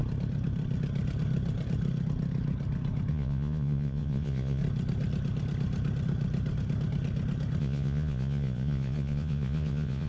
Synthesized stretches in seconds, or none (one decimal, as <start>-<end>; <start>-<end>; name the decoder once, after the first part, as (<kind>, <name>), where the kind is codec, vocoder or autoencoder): 3.1-4.6 (vocoder, Vocos); 7.6-10.1